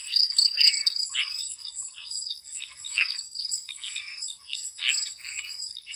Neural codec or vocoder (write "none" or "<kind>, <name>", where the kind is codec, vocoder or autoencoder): codec, SNAC